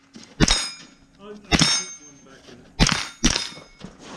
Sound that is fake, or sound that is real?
real